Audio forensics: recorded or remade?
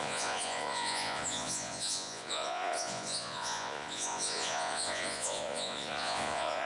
remade